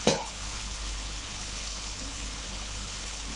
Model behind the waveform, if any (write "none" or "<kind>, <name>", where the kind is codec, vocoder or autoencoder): codec, HILCodec